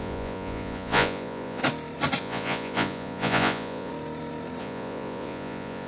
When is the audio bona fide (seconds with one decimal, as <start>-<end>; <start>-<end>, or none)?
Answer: 1.6-2.2; 3.9-4.6